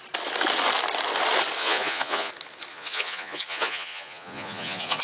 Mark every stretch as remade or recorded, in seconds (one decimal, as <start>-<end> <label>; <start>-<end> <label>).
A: 0.0-1.6 recorded; 1.6-2.3 remade; 2.3-2.7 recorded; 2.7-5.0 remade